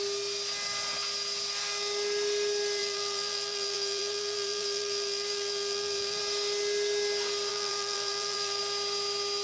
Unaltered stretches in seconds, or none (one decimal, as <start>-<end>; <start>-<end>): 0.0-2.8; 6.2-7.5; 8.6-9.4